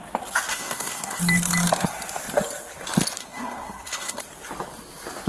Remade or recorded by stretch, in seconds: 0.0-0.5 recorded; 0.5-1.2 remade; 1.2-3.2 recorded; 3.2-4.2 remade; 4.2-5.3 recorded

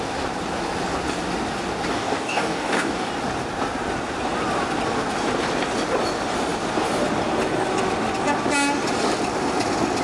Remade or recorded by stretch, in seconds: 0.0-1.9 recorded; 1.9-3.1 remade; 3.1-10.0 recorded

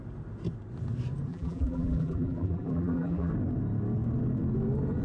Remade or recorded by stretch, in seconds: 0.0-1.3 recorded; 1.3-3.3 remade; 3.3-5.0 recorded

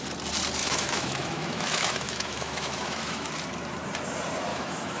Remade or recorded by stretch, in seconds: 0.0-0.6 recorded; 0.6-3.3 remade; 3.3-4.5 recorded; 4.5-5.0 remade